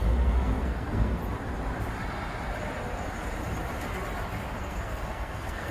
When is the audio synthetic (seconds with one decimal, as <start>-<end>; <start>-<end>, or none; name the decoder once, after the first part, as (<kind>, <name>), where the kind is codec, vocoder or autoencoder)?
0.0-1.2 (codec, SNAC); 4.6-5.7